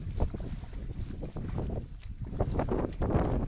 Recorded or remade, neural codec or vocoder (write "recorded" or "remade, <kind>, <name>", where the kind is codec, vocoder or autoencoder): recorded